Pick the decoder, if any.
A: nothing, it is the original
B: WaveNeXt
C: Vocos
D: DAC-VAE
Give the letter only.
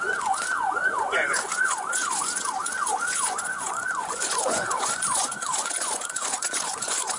C